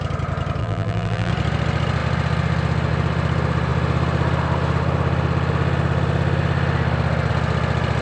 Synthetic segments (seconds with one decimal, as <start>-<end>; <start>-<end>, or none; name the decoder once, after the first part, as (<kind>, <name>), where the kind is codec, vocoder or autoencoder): 0.6-1.3 (vocoder, BigVGAN v2)